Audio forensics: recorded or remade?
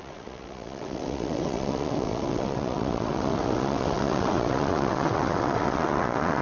remade